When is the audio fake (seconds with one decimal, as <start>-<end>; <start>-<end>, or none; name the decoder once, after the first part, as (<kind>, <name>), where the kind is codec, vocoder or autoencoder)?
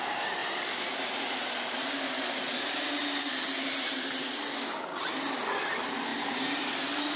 none